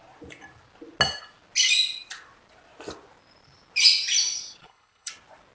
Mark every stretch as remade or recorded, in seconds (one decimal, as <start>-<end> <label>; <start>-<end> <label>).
0.0-4.6 recorded; 4.6-5.1 remade; 5.1-5.5 recorded